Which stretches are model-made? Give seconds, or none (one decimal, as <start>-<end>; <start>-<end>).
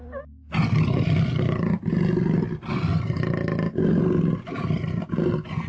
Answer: none